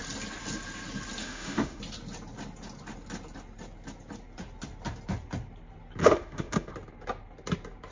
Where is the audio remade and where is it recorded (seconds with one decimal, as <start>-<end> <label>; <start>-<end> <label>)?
0.0-1.2 recorded; 1.2-1.8 remade; 1.8-6.0 recorded; 6.0-6.7 remade; 6.7-7.9 recorded